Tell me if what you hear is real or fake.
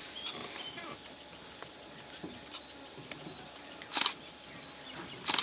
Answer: real